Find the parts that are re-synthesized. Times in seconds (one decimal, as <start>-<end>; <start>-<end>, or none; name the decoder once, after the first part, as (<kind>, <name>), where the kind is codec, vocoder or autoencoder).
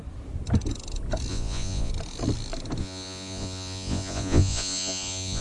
1.3-1.9 (vocoder, Vocos); 2.8-5.4